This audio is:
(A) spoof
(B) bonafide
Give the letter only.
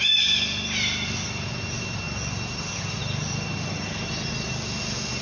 B